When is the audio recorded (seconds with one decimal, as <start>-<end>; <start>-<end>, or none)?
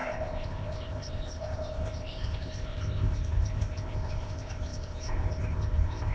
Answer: none